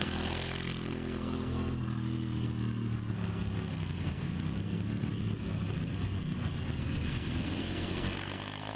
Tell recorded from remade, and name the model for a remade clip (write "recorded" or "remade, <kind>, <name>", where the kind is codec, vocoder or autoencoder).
remade, codec, SNAC